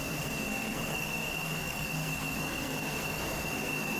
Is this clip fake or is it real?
fake